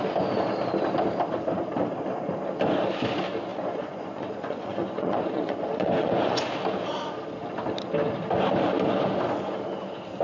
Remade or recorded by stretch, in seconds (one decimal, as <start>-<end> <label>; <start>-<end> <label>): 0.0-3.5 recorded; 3.5-6.4 remade; 6.4-10.2 recorded